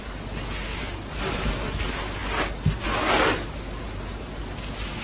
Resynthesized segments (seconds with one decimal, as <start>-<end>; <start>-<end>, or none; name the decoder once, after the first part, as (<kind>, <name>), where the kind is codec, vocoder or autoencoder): 0.7-1.2 (vocoder, BigVGAN v2)